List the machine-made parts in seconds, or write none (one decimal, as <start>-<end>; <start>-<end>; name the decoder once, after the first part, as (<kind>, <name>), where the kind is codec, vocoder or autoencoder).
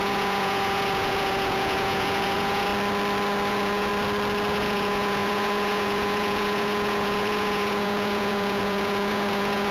0.0-2.7 (vocoder, Vocos); 3.5-3.9; 4.5-9.7